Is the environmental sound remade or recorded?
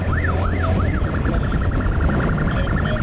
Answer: recorded